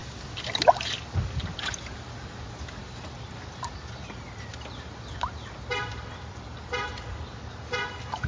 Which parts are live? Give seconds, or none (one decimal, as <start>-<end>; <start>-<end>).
0.0-8.3